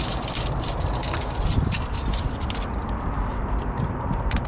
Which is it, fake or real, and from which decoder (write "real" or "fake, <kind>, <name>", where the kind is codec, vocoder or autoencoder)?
fake, vocoder, BigVGAN v2